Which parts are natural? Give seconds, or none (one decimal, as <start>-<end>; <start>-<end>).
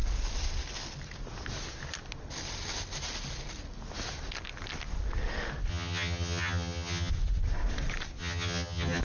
0.0-5.7; 7.1-8.2